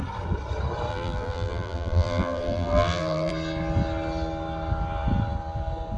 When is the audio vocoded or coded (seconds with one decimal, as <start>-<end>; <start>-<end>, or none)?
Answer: 0.9-3.3